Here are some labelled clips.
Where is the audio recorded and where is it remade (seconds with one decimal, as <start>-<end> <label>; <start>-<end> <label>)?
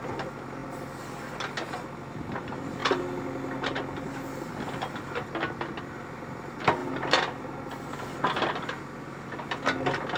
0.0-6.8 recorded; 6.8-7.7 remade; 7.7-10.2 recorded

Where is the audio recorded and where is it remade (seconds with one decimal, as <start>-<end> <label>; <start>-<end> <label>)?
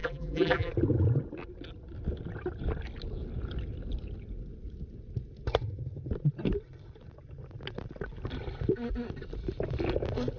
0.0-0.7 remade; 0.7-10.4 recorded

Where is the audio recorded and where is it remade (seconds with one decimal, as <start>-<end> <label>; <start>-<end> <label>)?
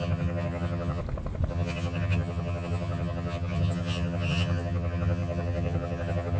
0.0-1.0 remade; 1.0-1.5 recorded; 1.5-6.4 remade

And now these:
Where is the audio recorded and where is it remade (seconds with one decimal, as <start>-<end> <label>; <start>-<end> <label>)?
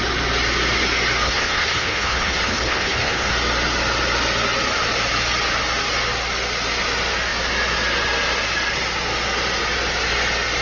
0.0-1.2 recorded; 1.2-3.3 remade; 3.3-10.6 recorded